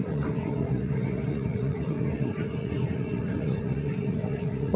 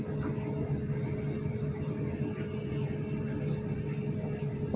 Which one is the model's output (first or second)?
first